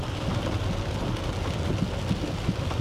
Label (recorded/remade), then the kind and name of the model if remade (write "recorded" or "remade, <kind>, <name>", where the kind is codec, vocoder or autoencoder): recorded